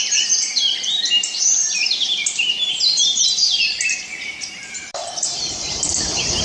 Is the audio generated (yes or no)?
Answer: yes